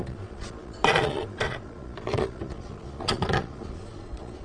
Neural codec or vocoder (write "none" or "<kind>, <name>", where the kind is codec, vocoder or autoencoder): vocoder, Vocos